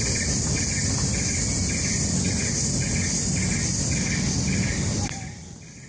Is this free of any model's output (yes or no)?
yes